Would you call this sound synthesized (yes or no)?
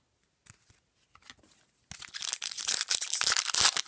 no